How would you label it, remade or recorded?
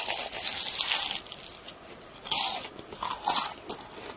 recorded